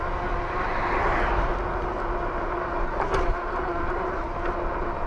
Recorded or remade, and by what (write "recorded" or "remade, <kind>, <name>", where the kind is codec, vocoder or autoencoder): recorded